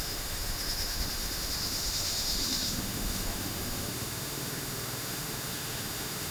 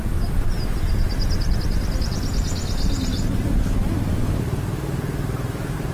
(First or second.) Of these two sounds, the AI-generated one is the first